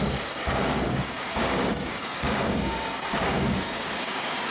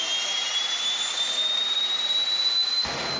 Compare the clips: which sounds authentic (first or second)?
second